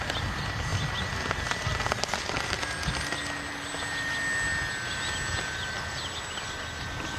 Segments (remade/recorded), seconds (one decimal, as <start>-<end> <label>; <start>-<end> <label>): 0.0-7.2 recorded

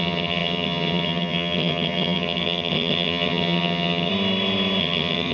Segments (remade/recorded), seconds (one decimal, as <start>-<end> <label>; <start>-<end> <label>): 0.0-4.1 remade; 4.1-4.8 recorded; 4.8-5.3 remade

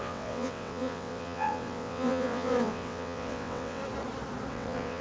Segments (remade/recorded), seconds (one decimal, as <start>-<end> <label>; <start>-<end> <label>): 0.0-3.8 remade; 3.8-4.5 recorded; 4.5-5.0 remade

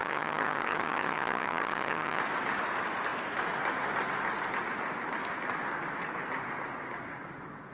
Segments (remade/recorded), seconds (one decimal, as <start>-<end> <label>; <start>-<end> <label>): 0.0-2.2 remade; 2.2-7.7 recorded

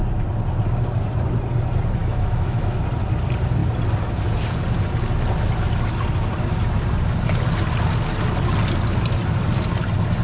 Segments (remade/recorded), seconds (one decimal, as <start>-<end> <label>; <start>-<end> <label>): 0.0-2.0 recorded; 2.0-2.8 remade; 2.8-10.2 recorded

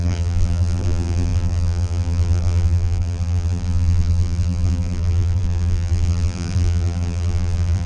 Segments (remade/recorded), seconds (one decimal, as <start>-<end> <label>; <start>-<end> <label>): 0.0-7.9 remade

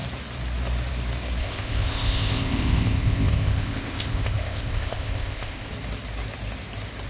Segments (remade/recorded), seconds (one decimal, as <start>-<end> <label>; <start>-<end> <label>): 0.0-1.4 recorded; 1.4-5.7 remade; 5.7-7.1 recorded

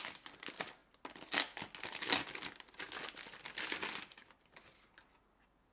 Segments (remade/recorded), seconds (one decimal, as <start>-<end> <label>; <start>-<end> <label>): 0.0-5.7 recorded